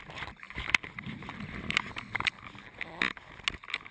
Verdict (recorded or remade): recorded